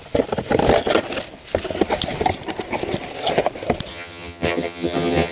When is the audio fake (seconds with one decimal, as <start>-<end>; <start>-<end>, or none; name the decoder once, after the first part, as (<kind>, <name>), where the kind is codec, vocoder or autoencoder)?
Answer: 3.9-5.3 (vocoder, HiFi-GAN)